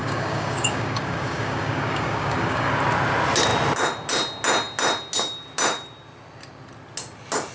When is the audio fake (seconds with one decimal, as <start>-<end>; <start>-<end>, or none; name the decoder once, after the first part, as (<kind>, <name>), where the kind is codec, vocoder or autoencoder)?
0.0-2.7 (codec, DAC)